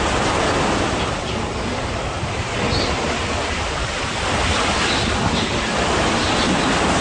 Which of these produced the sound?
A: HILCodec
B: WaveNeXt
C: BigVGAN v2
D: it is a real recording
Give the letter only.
D